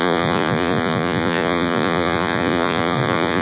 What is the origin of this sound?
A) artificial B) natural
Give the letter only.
A